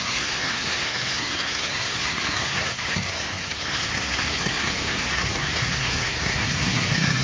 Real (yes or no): no